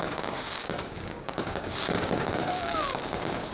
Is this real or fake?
fake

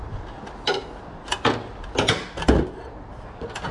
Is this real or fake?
real